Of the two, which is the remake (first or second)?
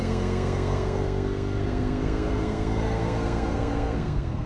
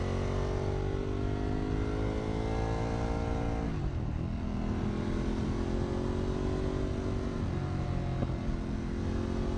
first